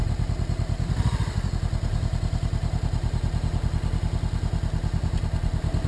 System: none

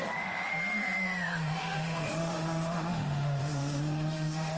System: autoencoder, DAC-VAE